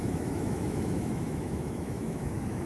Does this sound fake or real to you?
fake